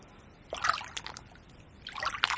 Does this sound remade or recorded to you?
recorded